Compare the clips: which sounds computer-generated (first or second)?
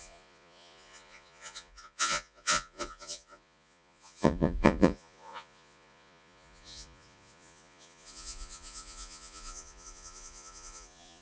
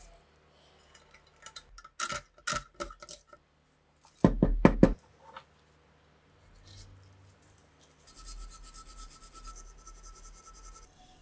first